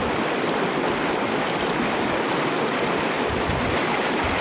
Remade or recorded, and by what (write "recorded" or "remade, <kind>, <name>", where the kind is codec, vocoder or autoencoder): recorded